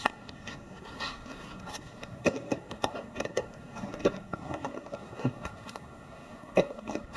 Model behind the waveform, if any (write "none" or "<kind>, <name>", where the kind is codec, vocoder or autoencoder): codec, SNAC